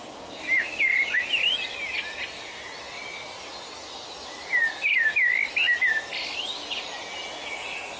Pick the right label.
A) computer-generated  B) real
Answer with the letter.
B